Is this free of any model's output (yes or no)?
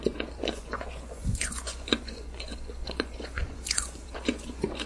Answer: no